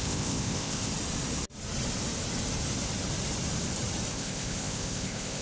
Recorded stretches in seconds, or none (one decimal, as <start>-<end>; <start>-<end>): 0.9-4.1